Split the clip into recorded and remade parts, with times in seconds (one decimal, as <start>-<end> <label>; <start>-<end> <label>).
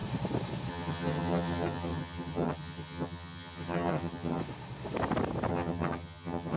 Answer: 0.0-0.7 recorded; 0.7-4.4 remade; 4.4-5.5 recorded; 5.5-6.6 remade